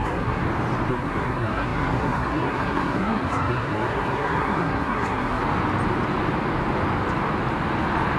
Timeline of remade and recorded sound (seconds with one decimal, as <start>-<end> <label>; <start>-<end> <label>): 0.0-0.4 remade; 0.4-0.9 recorded; 0.9-5.4 remade; 5.4-8.2 recorded

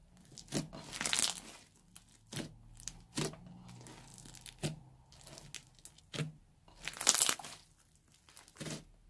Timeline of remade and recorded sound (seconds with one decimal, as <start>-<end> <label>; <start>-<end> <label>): 0.0-9.1 recorded

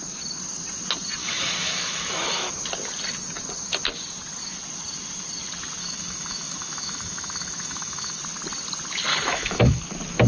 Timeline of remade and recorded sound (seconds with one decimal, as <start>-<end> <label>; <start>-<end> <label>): 0.0-1.2 recorded; 1.2-2.5 remade; 2.5-5.8 recorded; 5.8-8.2 remade; 8.2-9.1 recorded; 9.1-9.8 remade; 9.8-10.3 recorded

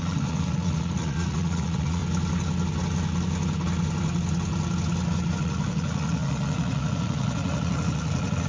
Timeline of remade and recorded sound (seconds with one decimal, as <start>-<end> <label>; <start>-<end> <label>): 0.0-2.0 remade; 2.0-5.4 recorded; 5.4-8.5 remade

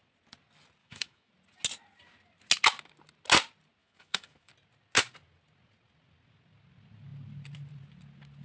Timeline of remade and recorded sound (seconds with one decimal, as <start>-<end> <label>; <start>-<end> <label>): 0.0-0.8 recorded; 0.8-1.3 remade; 1.3-3.8 recorded; 3.8-4.5 remade; 4.5-8.4 recorded